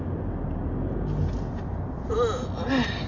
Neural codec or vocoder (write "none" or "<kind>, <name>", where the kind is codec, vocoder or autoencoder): none